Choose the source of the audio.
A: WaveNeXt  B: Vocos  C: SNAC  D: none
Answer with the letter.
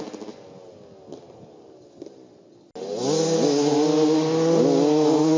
D